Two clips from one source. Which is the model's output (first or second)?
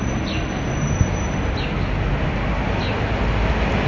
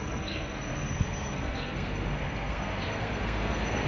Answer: second